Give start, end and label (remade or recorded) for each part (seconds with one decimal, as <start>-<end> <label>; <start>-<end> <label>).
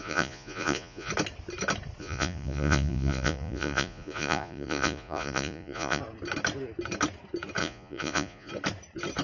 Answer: 0.0-1.1 remade; 1.1-2.0 recorded; 2.0-6.0 remade; 6.0-7.6 recorded; 7.6-8.5 remade; 8.5-9.2 recorded